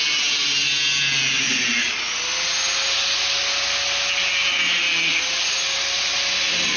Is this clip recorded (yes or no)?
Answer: yes